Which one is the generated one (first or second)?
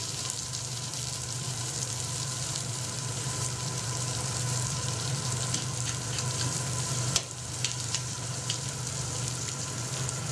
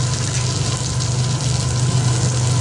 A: first